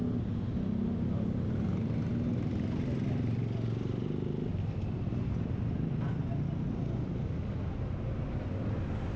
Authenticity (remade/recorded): recorded